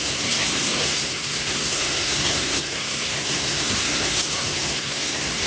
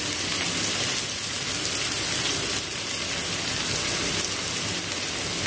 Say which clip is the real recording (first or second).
second